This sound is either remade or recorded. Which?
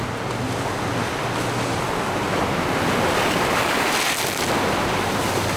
recorded